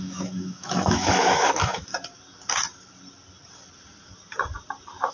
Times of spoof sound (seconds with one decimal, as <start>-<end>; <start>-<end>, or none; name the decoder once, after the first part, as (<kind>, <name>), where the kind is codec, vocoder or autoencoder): 0.0-1.9 (autoencoder, DAC-VAE)